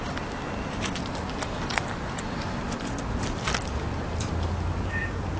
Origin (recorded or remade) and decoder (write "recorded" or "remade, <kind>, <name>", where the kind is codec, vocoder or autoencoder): recorded